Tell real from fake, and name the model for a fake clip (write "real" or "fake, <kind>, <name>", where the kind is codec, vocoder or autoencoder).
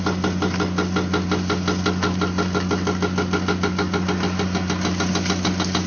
real